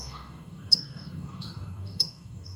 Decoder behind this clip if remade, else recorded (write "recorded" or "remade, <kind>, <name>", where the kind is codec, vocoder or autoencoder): remade, codec, DAC